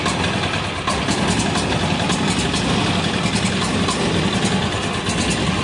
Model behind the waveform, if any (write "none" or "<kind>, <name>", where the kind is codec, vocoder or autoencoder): none